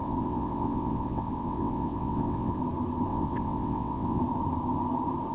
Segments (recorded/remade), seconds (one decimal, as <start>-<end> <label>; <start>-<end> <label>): 0.0-2.6 remade; 2.6-3.1 recorded; 3.1-4.2 remade; 4.2-5.3 recorded